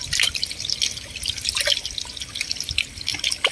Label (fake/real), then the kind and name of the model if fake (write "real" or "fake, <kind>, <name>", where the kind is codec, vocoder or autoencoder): real